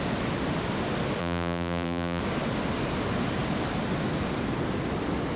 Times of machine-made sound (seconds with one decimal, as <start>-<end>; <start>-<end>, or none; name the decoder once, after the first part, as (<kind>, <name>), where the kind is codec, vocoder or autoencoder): 1.2-2.2 (vocoder, BigVGAN v2)